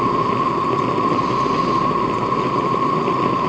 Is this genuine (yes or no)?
yes